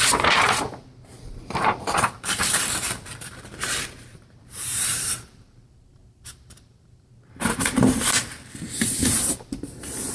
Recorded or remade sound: remade